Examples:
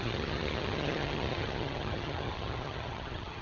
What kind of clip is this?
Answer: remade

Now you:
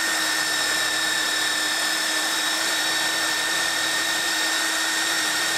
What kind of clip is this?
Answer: remade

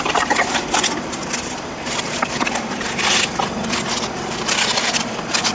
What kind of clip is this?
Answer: recorded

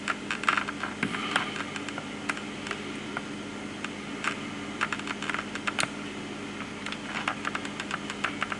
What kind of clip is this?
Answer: recorded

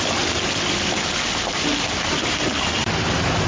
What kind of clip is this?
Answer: recorded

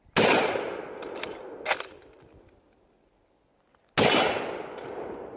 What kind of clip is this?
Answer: recorded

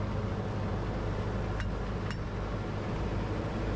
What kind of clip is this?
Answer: recorded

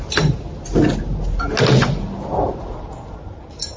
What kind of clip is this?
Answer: recorded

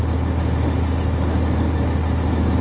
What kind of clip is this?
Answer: recorded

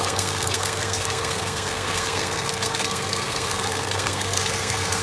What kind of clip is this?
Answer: remade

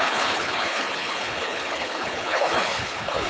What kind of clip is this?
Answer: remade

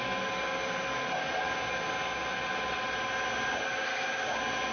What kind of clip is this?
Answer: recorded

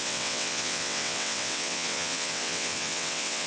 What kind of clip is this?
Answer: remade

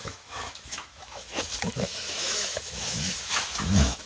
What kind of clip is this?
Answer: remade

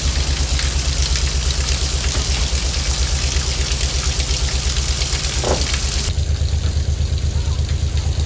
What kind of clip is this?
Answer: recorded